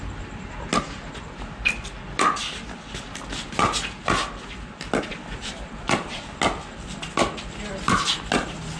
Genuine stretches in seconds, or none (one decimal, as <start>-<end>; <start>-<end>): 0.0-5.1; 6.2-8.8